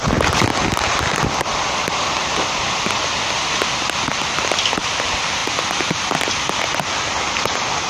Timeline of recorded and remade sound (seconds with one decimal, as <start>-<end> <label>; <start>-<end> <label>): 0.0-7.9 recorded